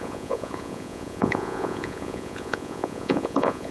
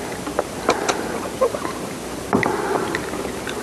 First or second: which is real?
second